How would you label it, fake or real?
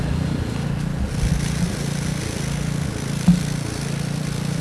fake